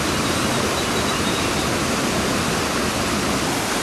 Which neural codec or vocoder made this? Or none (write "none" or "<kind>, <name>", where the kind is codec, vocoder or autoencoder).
none